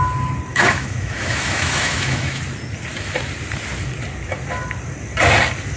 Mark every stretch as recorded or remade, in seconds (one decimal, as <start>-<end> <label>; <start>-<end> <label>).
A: 0.0-0.5 recorded; 0.5-2.4 remade; 2.4-5.8 recorded

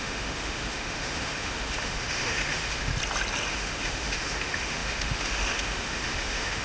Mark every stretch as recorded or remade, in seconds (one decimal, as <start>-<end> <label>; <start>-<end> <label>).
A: 0.0-2.9 remade; 2.9-3.5 recorded; 3.5-6.6 remade